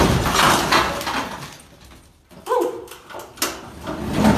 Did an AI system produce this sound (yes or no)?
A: no